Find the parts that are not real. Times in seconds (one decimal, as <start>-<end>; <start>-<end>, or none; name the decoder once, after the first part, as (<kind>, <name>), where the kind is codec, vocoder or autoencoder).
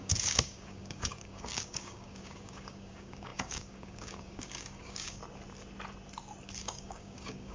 0.0-5.2 (codec, DAC); 6.6-7.5